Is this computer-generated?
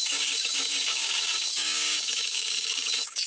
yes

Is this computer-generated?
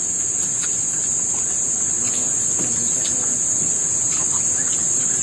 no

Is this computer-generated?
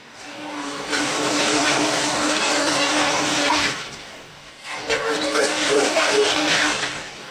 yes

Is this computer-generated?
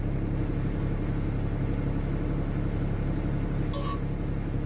no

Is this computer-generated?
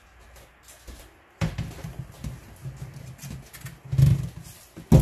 no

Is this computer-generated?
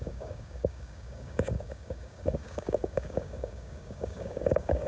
yes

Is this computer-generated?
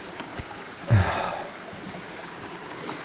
yes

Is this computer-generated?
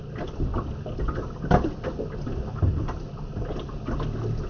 no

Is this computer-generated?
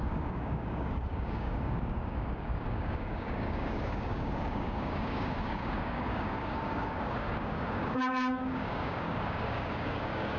yes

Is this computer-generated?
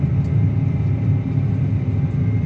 no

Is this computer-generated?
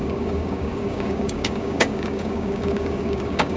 yes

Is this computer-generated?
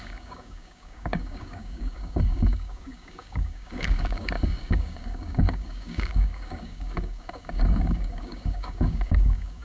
yes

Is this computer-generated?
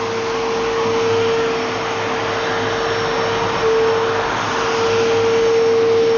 no